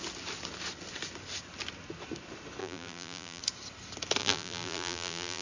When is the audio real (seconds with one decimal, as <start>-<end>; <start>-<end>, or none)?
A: 0.0-2.6; 3.4-4.2